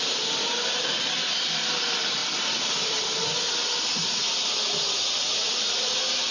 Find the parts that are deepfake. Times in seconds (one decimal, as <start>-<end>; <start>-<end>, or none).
2.2-3.2